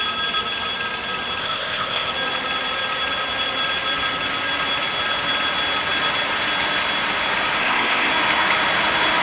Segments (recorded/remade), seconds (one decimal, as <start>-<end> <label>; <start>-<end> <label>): 0.0-1.4 recorded; 1.4-2.1 remade; 2.1-7.6 recorded; 7.6-8.1 remade; 8.1-9.2 recorded